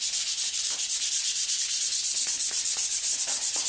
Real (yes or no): yes